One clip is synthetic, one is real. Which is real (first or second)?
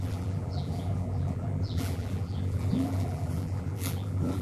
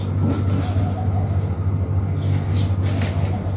second